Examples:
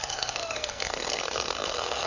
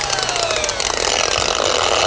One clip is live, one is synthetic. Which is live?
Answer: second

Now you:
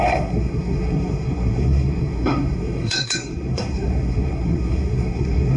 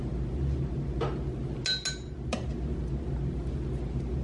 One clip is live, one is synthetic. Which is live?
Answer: second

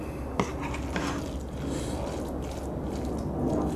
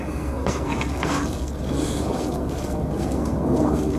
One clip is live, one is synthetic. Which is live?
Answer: first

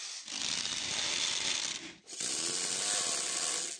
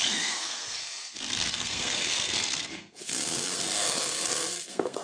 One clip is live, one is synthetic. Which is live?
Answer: first